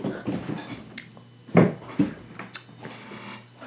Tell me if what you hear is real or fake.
real